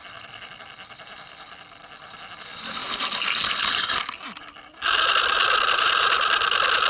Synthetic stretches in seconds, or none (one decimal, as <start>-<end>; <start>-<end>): none